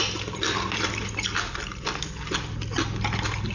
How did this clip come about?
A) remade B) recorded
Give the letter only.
B